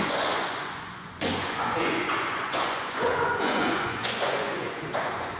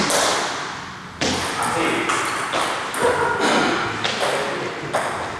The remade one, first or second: first